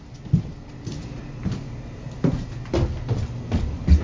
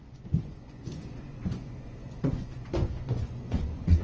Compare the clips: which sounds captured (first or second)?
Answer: first